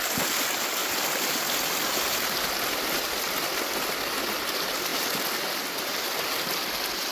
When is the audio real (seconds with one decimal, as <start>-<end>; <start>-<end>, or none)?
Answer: 0.0-7.1